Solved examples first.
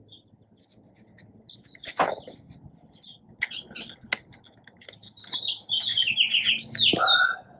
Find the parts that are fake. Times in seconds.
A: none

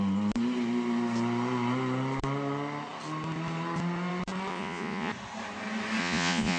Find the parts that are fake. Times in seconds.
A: 4.5-5.1 (vocoder, Vocos); 6.0-6.6

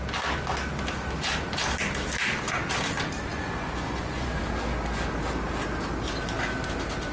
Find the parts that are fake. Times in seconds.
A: 3.3-4.4 (vocoder, Vocos)

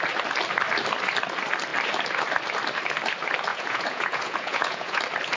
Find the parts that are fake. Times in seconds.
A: 3.5-5.0 (vocoder, Vocos)

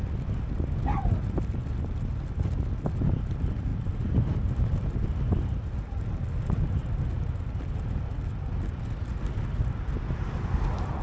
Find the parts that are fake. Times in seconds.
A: none